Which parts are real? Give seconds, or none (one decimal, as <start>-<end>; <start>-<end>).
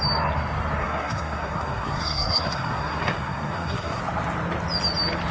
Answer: 0.0-0.8; 4.0-5.3